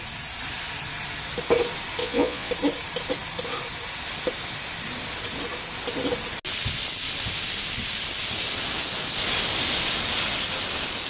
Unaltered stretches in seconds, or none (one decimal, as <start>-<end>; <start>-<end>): 0.0-2.0; 2.5-11.1